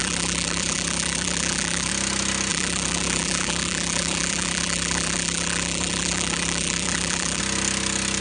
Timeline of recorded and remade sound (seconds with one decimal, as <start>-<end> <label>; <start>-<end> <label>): 0.0-1.9 remade; 1.9-2.5 recorded; 2.5-7.4 remade; 7.4-8.2 recorded